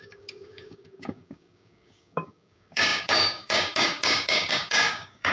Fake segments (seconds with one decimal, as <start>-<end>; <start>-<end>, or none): 0.0-5.3